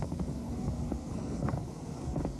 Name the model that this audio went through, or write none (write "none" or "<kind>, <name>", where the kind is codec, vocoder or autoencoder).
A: codec, SNAC